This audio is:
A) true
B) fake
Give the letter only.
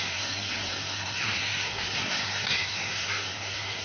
B